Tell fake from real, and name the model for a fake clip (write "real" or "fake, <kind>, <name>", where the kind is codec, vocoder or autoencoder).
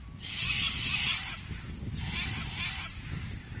real